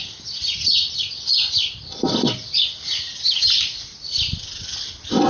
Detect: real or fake real